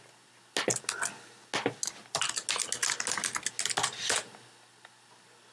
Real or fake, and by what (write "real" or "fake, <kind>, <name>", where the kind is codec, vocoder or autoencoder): real